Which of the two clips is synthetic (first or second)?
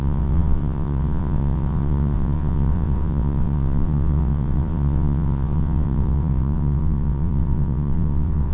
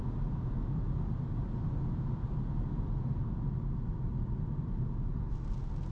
first